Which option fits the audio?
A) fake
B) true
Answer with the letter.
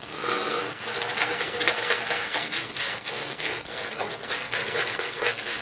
A